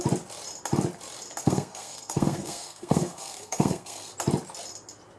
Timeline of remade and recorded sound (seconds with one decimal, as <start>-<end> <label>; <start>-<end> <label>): 0.0-1.4 recorded; 1.4-4.1 remade; 4.1-5.2 recorded